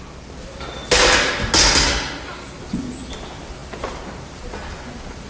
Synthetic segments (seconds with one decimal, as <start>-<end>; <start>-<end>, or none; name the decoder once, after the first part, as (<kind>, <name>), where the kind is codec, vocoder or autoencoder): none